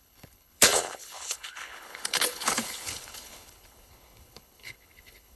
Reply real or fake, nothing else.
fake